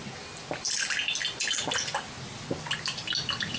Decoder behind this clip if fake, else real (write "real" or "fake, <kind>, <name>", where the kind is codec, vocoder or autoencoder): real